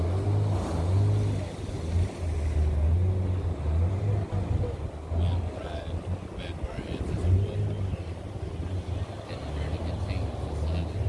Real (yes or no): yes